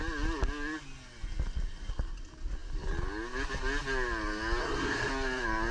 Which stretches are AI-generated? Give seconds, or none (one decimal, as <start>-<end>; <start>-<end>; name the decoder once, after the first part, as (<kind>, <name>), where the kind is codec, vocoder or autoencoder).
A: 4.6-5.1 (codec, SNAC)